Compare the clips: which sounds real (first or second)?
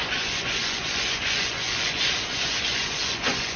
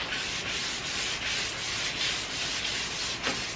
second